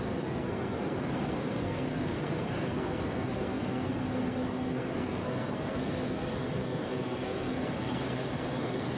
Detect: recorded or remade remade